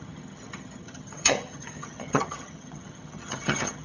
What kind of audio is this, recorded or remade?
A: remade